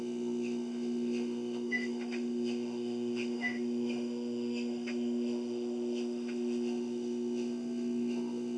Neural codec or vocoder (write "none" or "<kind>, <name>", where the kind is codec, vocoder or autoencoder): autoencoder, DAC-VAE